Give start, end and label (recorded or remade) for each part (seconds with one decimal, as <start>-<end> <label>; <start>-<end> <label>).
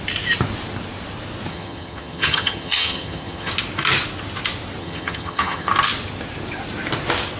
0.0-1.5 recorded; 1.5-3.5 remade; 3.5-4.8 recorded; 4.8-5.7 remade; 5.7-7.4 recorded